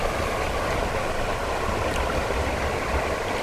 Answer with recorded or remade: recorded